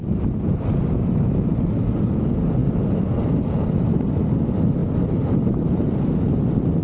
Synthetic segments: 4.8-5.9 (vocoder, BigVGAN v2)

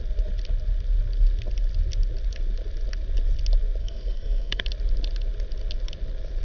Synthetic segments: 3.8-4.6 (codec, SNAC)

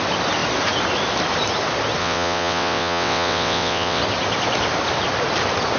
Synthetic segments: 2.0-4.0 (vocoder, WaveNeXt)

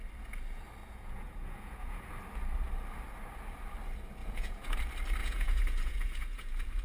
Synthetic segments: 0.8-2.1 (vocoder, Vocos); 4.2-4.8; 5.2-6.8

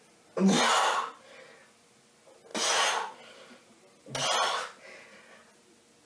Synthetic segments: none